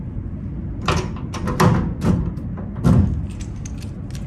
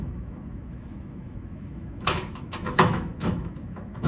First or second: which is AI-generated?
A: second